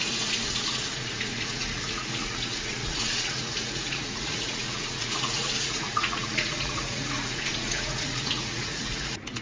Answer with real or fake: fake